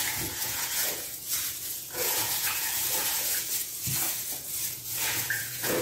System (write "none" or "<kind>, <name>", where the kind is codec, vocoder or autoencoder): vocoder, Vocos